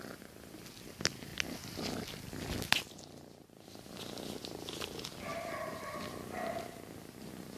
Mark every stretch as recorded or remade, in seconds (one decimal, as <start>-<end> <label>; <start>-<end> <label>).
0.0-5.3 recorded; 5.3-6.5 remade; 6.5-7.6 recorded